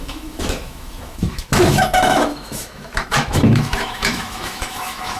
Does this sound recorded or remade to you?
remade